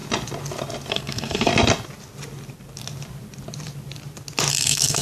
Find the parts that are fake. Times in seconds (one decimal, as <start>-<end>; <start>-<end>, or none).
0.9-1.5; 4.5-5.0